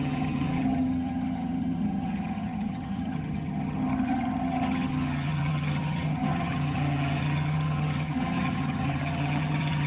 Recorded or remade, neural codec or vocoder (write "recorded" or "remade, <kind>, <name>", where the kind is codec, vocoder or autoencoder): remade, vocoder, HiFi-GAN